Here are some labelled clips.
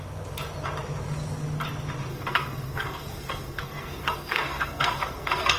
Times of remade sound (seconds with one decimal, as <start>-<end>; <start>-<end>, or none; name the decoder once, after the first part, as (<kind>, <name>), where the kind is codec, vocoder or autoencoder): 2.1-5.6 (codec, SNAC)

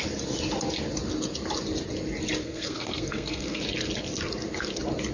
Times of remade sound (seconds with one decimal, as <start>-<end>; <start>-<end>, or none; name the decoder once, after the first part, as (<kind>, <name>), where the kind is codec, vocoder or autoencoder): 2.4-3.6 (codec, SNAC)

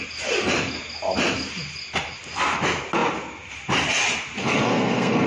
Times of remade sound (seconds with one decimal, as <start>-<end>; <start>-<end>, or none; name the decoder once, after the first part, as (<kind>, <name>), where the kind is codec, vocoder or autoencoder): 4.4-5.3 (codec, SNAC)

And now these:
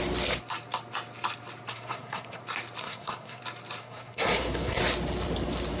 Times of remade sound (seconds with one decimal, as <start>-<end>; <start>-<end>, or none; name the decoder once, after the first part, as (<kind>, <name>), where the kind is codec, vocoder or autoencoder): 1.7-2.4 (codec, SNAC); 2.8-3.4; 3.8-4.8

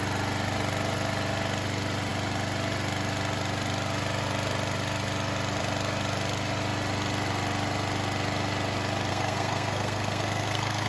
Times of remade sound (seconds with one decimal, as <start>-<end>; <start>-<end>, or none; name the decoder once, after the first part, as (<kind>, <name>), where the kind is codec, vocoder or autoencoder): 9.1-10.9 (codec, SNAC)

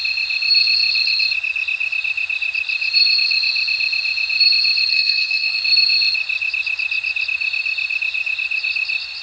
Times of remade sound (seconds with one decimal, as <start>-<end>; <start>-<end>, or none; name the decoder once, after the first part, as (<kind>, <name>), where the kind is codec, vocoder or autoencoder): 4.9-5.6 (codec, SNAC)

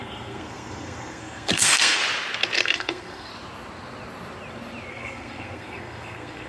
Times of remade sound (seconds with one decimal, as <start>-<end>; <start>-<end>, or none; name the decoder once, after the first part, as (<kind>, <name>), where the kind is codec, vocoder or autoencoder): 0.0-2.0 (codec, SNAC); 2.6-3.3; 4.9-6.5

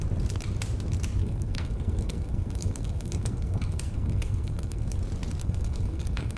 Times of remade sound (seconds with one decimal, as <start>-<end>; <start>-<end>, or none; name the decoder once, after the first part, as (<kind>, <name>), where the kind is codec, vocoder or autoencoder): 1.2-5.0 (codec, SNAC); 5.4-6.4